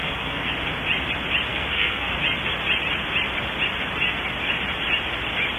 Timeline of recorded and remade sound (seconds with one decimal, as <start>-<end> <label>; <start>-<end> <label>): 0.0-0.5 remade; 0.5-1.5 recorded; 1.5-2.2 remade; 2.2-5.6 recorded